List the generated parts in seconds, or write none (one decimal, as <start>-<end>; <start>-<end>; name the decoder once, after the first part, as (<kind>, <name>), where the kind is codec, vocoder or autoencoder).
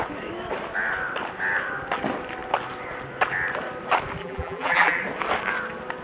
4.2-5.0 (vocoder, BigVGAN v2)